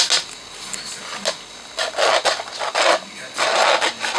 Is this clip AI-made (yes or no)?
no